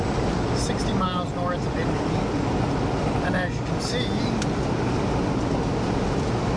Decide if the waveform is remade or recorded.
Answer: recorded